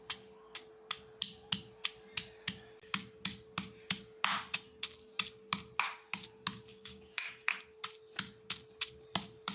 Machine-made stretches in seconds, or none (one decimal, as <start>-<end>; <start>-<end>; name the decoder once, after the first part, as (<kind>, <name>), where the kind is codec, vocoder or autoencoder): 6.7-7.6 (codec, DAC)